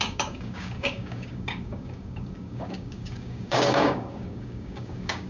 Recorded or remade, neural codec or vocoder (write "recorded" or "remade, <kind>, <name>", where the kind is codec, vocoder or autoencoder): remade, codec, DAC